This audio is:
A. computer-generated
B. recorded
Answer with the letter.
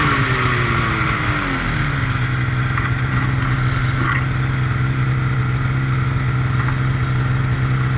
B